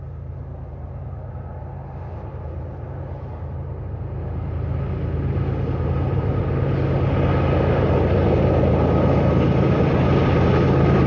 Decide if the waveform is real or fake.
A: real